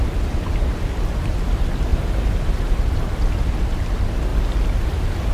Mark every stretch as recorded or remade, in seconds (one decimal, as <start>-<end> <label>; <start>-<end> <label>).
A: 0.0-1.9 recorded; 1.9-2.7 remade; 2.7-5.3 recorded